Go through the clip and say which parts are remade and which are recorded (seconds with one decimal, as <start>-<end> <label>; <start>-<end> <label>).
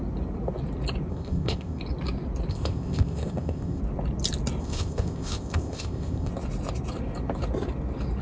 0.0-1.1 recorded; 1.1-1.8 remade; 1.8-2.5 recorded; 2.5-3.8 remade; 3.8-4.6 recorded; 4.6-6.3 remade; 6.3-8.2 recorded